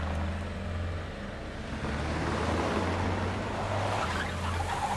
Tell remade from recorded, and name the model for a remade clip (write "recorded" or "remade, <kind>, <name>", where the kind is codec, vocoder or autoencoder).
recorded